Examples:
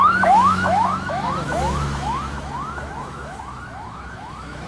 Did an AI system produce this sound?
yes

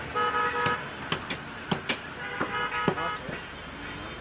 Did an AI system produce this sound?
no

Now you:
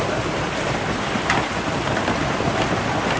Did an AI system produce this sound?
no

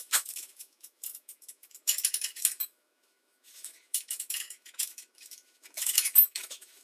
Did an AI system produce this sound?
yes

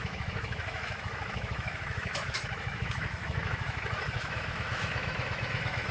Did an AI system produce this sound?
yes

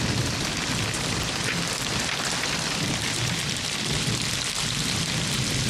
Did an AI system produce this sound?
no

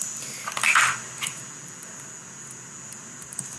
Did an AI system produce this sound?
no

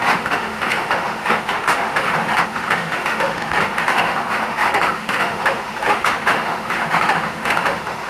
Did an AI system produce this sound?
yes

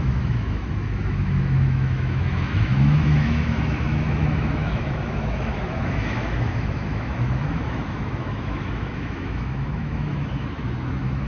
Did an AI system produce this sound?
yes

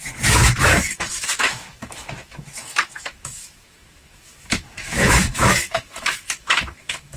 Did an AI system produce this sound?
yes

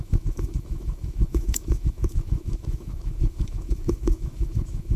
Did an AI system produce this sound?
yes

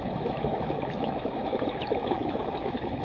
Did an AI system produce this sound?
yes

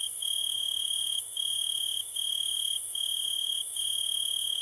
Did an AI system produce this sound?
yes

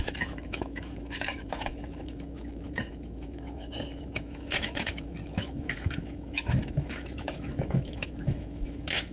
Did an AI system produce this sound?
yes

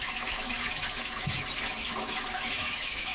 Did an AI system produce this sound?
yes